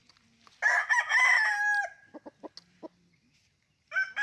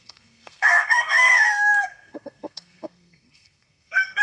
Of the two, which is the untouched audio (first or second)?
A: first